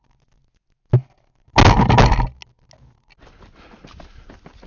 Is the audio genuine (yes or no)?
yes